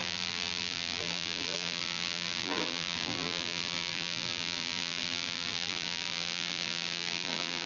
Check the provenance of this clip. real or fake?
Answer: fake